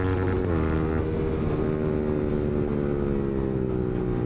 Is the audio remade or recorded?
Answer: recorded